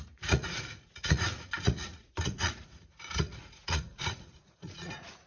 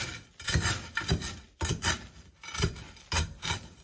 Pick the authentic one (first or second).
second